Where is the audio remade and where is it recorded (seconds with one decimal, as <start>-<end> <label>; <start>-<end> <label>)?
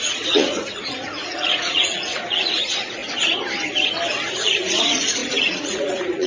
0.0-3.0 remade; 3.0-4.3 recorded; 4.3-6.3 remade